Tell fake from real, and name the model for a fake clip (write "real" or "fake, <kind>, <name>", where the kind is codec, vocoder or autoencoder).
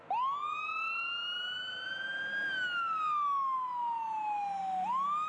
real